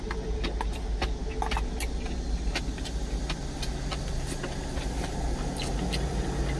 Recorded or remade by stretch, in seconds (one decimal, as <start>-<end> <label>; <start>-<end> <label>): 0.0-6.6 recorded